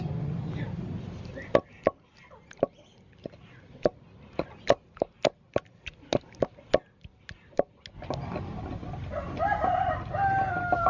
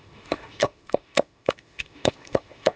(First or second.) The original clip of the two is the first